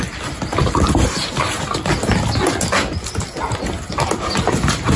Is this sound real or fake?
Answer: real